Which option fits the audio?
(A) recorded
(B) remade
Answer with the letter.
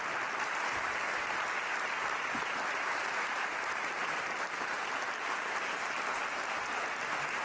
A